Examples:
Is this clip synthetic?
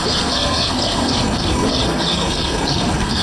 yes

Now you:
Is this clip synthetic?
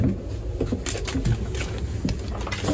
no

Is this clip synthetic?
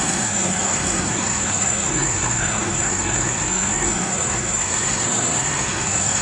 yes